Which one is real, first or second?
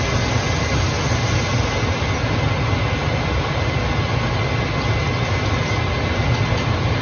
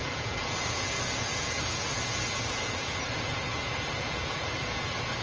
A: first